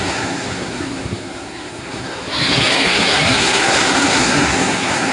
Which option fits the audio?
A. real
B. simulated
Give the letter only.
B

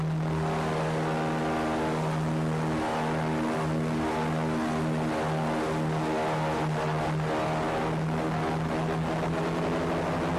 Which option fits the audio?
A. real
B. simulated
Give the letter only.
A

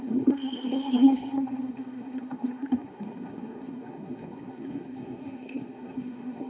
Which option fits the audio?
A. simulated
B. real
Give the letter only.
A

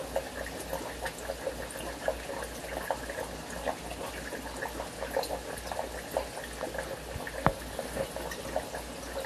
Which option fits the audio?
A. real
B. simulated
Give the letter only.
A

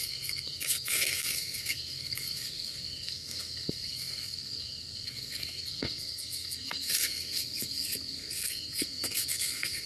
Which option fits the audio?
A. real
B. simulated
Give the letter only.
B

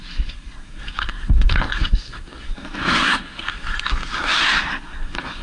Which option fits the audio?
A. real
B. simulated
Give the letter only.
B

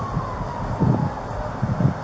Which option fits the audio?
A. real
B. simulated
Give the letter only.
A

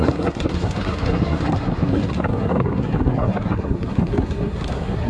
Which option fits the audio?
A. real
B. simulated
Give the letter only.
B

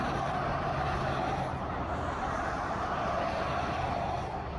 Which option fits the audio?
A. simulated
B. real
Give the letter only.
B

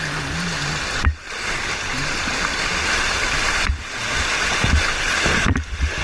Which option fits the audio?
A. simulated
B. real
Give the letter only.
B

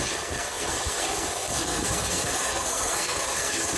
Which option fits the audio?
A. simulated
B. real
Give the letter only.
A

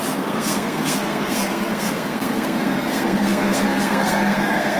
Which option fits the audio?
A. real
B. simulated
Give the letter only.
B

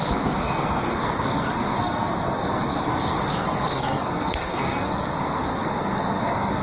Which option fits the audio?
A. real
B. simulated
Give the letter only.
B